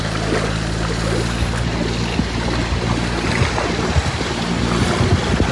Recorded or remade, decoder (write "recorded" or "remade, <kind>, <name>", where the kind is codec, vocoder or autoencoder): recorded